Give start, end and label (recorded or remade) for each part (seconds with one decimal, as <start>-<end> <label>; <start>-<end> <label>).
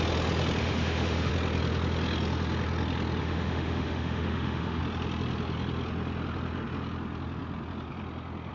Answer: 0.0-0.6 recorded; 0.6-1.3 remade; 1.3-3.2 recorded; 3.2-4.8 remade; 4.8-8.5 recorded